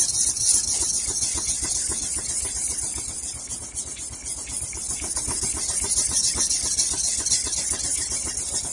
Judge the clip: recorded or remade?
recorded